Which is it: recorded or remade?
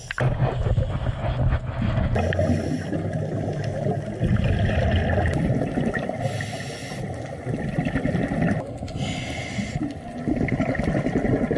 recorded